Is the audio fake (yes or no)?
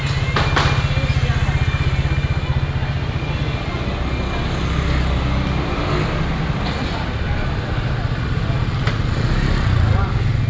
no